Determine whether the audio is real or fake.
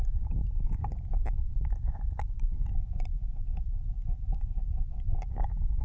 fake